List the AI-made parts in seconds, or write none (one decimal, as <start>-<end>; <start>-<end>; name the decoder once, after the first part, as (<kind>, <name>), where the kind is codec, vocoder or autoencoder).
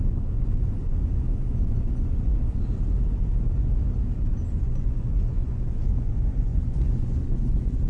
0.0-2.3 (vocoder, Vocos); 4.5-7.9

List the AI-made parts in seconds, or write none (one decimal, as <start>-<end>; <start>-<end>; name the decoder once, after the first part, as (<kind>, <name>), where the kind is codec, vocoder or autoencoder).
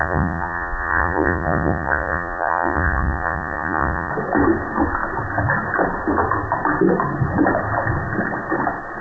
0.0-4.1 (vocoder, Vocos)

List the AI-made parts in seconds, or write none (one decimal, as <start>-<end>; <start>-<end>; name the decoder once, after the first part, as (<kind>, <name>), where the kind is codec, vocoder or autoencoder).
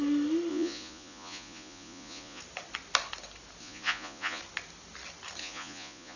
0.5-2.4 (vocoder, Vocos); 3.6-4.4; 5.4-6.2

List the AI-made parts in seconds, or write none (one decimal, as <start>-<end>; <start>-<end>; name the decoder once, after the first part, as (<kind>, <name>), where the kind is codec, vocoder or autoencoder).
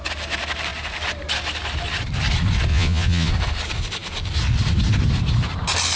2.7-3.3 (vocoder, Vocos)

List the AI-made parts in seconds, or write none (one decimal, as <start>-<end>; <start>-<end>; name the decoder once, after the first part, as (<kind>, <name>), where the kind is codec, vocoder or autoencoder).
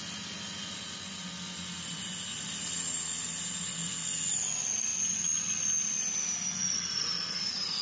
2.6-4.9 (vocoder, Vocos); 6.6-7.8